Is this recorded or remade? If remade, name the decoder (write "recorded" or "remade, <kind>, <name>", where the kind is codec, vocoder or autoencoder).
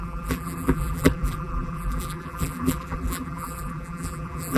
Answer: remade, vocoder, BigVGAN v2